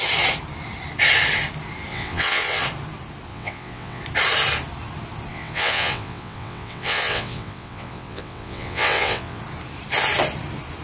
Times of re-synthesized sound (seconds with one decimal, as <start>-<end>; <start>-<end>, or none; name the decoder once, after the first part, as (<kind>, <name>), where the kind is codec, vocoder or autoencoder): 1.9-2.6 (vocoder, WaveNeXt); 3.3-4.0; 5.3-9.4